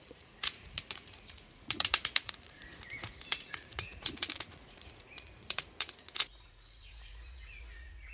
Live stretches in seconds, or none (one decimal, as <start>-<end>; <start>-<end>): 2.7-3.3